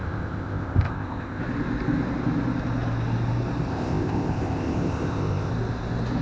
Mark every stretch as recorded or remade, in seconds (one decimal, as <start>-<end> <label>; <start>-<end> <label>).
0.0-1.4 remade; 1.4-3.7 recorded; 3.7-5.5 remade; 5.5-6.2 recorded